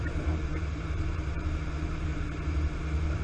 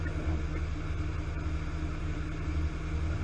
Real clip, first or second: second